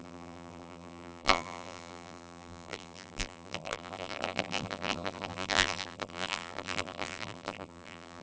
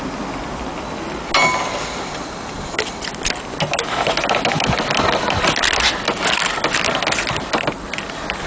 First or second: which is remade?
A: first